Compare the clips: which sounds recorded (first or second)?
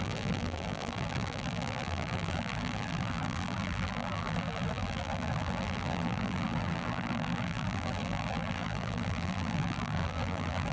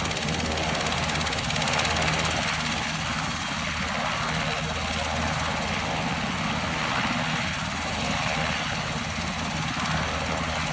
second